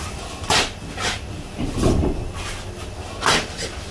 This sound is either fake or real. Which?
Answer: real